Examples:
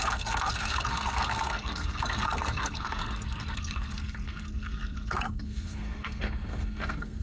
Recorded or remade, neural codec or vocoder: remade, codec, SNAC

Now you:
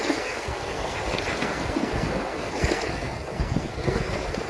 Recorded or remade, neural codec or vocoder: remade, codec, SNAC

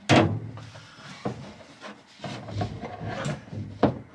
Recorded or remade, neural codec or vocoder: recorded